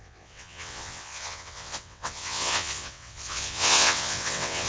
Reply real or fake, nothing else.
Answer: fake